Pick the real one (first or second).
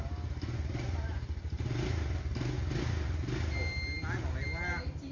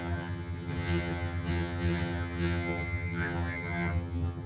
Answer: first